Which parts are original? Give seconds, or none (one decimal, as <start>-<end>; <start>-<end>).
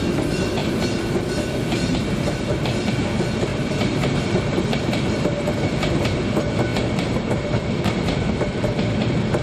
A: 0.0-3.5; 4.8-6.7; 7.8-9.4